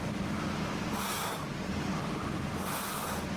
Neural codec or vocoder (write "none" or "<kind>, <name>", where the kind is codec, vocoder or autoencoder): none